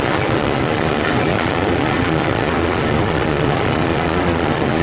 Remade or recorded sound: remade